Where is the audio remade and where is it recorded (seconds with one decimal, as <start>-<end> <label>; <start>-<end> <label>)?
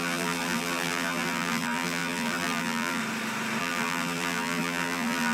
0.0-3.0 remade; 3.0-3.6 recorded; 3.6-5.3 remade